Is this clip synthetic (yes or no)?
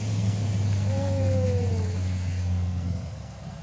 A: yes